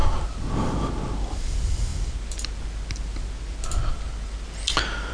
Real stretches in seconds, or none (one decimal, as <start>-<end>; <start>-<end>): 0.0-5.1